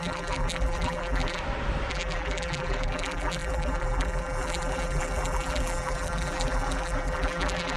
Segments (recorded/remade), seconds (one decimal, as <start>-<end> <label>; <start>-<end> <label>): 0.0-1.4 remade; 1.4-1.9 recorded; 1.9-7.8 remade